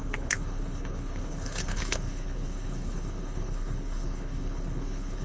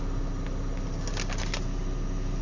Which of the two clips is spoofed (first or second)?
first